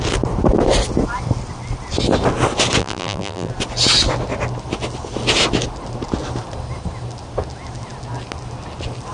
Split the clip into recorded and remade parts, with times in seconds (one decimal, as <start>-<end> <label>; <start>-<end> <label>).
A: 0.0-2.8 recorded; 2.8-3.5 remade; 3.5-9.1 recorded